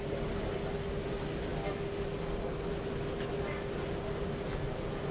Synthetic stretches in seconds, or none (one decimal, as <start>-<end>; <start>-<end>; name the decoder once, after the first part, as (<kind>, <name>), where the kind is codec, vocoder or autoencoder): none